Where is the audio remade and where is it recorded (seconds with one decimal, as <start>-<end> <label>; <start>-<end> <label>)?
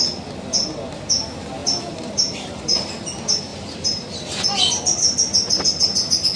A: 0.0-1.6 recorded; 1.6-2.6 remade; 2.6-3.5 recorded; 3.5-4.2 remade; 4.2-6.4 recorded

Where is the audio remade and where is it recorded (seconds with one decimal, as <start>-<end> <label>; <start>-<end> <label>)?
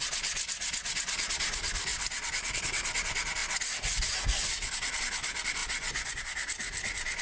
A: 0.0-5.6 recorded; 5.6-6.2 remade; 6.2-7.2 recorded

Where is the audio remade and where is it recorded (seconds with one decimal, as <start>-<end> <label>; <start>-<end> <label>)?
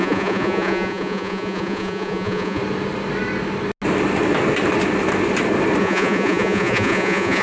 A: 0.0-2.6 remade; 2.6-5.8 recorded; 5.8-7.4 remade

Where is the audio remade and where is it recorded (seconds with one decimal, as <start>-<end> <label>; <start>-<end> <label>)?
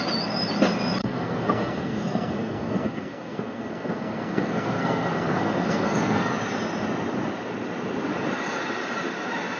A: 0.0-1.0 recorded; 1.0-6.3 remade; 6.3-9.6 recorded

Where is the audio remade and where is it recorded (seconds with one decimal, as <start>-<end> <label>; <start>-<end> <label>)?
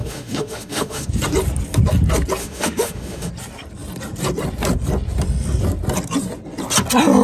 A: 0.0-1.1 remade; 1.1-2.4 recorded; 2.4-3.3 remade; 3.3-7.2 recorded